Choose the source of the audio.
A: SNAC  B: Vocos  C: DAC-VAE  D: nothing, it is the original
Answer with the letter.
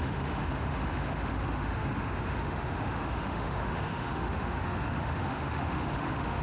C